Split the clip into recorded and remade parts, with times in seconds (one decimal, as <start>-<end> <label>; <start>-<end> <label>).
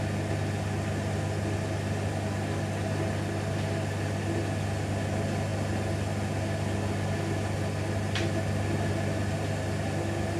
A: 0.0-10.4 recorded